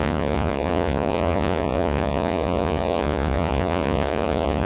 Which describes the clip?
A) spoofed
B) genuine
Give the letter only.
A